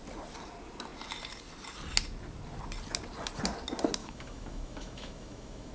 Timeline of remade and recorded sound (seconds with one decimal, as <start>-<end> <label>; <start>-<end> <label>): 0.0-4.0 recorded; 4.0-5.7 remade